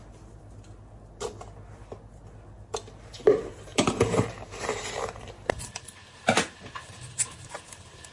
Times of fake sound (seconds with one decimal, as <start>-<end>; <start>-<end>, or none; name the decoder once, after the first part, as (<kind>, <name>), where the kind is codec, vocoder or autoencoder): 3.5-8.1 (vocoder, BigVGAN v2)